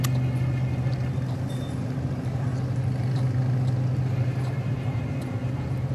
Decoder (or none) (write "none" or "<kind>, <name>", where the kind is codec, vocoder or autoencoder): none